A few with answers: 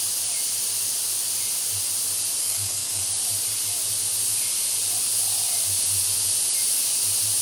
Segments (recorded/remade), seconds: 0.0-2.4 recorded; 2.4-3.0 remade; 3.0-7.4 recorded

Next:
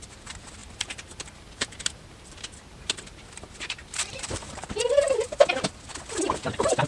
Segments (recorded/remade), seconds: 0.0-0.6 recorded; 0.6-4.7 remade; 4.7-6.9 recorded

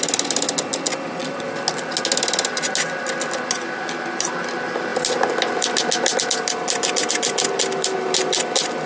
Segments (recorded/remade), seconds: 0.0-8.9 recorded

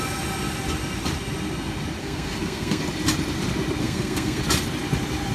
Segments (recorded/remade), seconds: 0.0-2.0 recorded; 2.0-2.8 remade; 2.8-3.8 recorded; 3.8-4.4 remade; 4.4-5.3 recorded

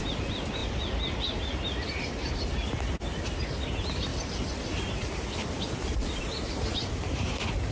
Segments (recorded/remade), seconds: 0.0-7.7 recorded

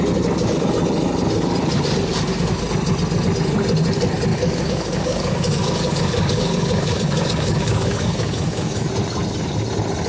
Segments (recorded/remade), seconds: 0.0-4.3 recorded; 4.3-8.9 remade; 8.9-10.1 recorded